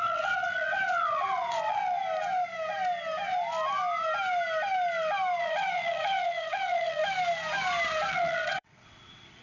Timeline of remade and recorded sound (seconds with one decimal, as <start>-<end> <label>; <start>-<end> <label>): 0.0-1.8 remade; 1.8-5.4 recorded; 5.4-7.0 remade; 7.0-8.1 recorded; 8.1-9.4 remade